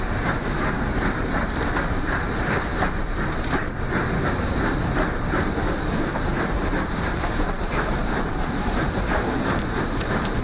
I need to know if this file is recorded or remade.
remade